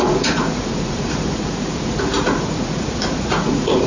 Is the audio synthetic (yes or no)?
yes